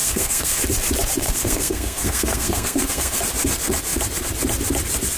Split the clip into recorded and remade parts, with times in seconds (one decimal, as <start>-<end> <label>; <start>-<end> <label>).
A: 0.0-0.6 remade; 0.6-1.2 recorded; 1.2-3.2 remade; 3.2-5.2 recorded